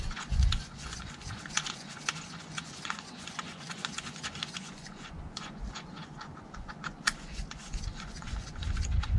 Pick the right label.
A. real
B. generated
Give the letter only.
B